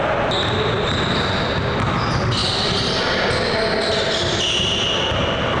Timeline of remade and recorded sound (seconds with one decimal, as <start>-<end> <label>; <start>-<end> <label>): 0.0-5.6 recorded